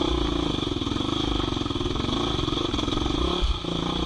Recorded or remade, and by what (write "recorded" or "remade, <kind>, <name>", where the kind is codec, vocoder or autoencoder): recorded